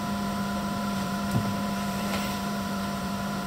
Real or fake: fake